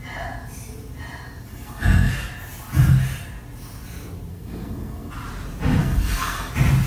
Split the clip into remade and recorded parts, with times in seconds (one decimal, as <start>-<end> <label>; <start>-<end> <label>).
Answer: 0.0-1.5 recorded; 1.5-2.1 remade; 2.1-4.3 recorded; 4.3-5.1 remade; 5.1-5.8 recorded; 5.8-6.5 remade; 6.5-6.9 recorded